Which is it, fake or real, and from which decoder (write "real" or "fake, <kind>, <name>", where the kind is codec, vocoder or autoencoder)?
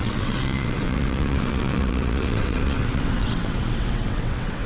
fake, vocoder, WaveNeXt